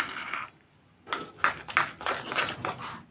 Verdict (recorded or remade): recorded